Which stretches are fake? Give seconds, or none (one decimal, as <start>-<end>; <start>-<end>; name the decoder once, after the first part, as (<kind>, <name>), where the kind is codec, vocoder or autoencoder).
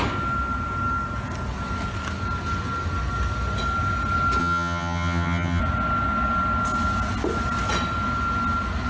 4.4-5.6 (vocoder, HiFi-GAN)